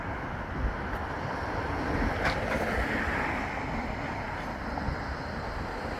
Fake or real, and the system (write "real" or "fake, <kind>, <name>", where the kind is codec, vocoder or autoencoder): real